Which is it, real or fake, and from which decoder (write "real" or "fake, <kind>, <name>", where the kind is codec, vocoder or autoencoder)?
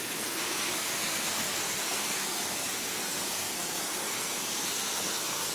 fake, codec, SNAC